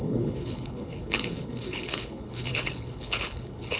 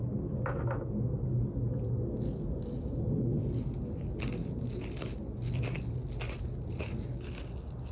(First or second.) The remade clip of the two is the first